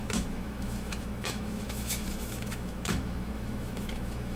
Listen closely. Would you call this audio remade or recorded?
remade